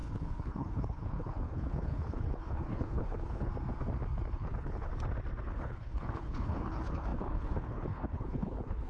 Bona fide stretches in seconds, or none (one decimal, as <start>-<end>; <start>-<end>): 3.5-4.3; 4.9-5.4